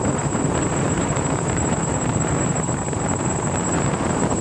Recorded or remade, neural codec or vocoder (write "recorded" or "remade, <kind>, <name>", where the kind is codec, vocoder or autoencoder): remade, vocoder, BigVGAN v2